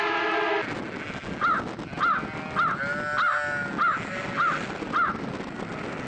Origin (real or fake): real